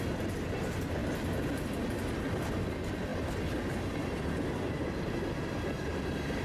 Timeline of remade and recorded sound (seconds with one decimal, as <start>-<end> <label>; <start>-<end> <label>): 0.0-6.4 recorded